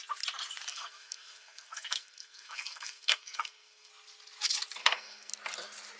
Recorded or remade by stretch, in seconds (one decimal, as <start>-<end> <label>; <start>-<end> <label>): 0.0-0.7 recorded; 0.7-3.9 remade; 3.9-4.8 recorded; 4.8-5.3 remade; 5.3-6.0 recorded